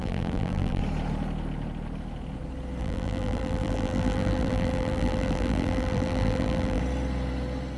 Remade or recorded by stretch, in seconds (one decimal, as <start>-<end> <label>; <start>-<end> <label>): 0.0-0.8 remade; 0.8-2.8 recorded; 2.8-6.8 remade; 6.8-7.8 recorded